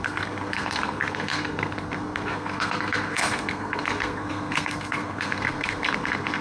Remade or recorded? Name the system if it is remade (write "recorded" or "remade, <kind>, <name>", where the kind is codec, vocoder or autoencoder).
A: remade, codec, SNAC